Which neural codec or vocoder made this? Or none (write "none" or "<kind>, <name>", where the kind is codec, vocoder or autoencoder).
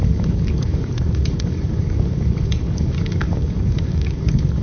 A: codec, DAC